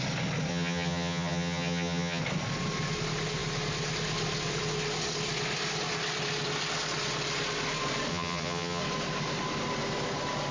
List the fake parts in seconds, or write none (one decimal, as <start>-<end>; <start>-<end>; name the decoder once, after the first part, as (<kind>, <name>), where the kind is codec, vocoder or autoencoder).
0.5-2.2 (vocoder, HiFi-GAN); 8.1-8.8